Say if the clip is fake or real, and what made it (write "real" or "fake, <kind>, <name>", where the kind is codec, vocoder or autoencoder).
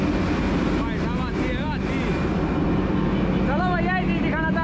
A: real